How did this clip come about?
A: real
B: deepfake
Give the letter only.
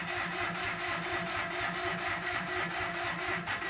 B